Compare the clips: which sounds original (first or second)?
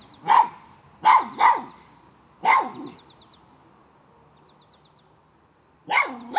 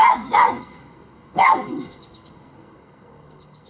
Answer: first